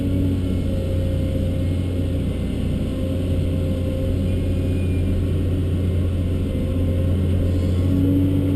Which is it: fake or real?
real